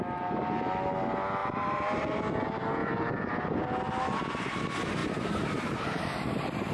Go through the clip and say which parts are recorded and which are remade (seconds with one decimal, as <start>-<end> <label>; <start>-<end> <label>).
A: 0.0-1.4 recorded; 1.4-2.2 remade; 2.2-2.8 recorded; 2.8-3.3 remade; 3.3-5.0 recorded; 5.0-6.7 remade